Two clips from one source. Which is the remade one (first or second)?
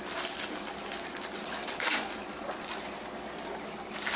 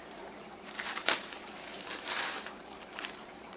second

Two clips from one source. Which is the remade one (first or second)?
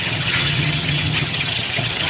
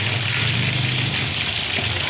first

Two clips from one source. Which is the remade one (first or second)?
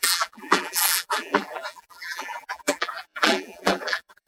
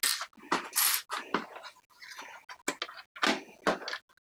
first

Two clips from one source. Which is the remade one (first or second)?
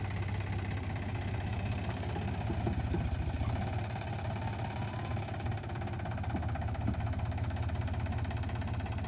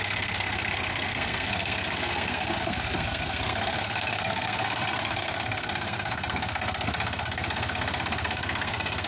second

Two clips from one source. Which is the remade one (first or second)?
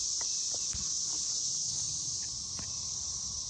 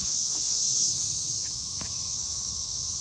second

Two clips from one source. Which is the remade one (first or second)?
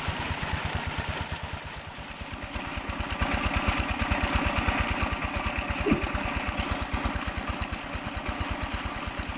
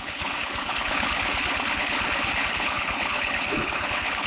second